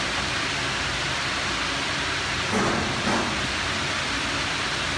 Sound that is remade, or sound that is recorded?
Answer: recorded